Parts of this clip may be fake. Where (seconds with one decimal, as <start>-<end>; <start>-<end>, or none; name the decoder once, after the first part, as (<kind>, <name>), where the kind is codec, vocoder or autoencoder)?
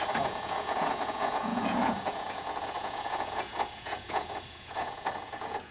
0.0-5.7 (vocoder, Vocos)